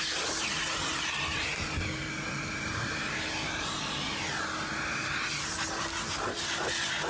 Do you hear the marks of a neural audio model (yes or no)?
no